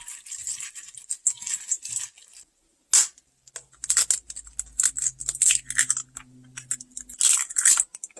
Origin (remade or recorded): recorded